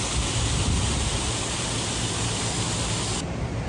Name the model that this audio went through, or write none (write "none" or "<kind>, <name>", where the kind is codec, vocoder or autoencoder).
none